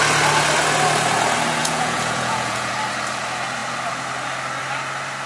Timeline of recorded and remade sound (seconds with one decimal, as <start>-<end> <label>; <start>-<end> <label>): 0.0-1.6 recorded; 1.6-2.7 remade; 2.7-5.3 recorded